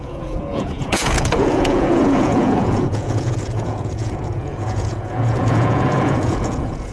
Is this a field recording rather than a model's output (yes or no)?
no